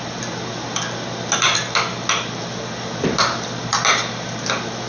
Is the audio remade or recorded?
recorded